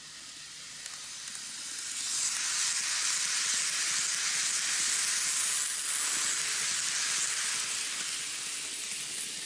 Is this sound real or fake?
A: real